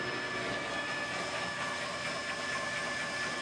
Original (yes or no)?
yes